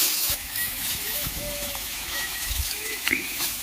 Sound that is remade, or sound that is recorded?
remade